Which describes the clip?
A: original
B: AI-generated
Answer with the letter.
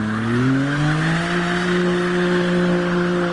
A